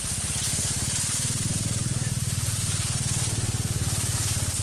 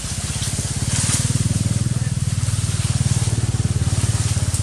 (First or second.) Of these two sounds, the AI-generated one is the first